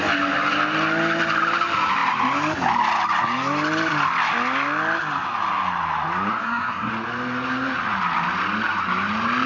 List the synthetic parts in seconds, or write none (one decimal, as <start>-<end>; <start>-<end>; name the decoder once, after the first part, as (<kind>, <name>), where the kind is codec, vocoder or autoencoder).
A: 6.3-6.9 (codec, SNAC)